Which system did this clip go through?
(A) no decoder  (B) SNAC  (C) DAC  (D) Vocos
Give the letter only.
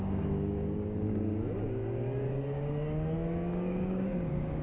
C